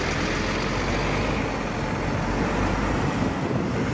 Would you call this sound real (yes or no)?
yes